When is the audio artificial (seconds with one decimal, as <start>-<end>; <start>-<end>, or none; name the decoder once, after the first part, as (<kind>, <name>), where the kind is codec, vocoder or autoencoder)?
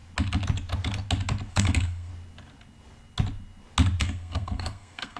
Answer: 1.5-2.1 (codec, SNAC); 4.0-5.2